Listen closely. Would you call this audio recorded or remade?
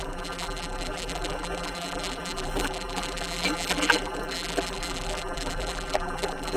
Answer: remade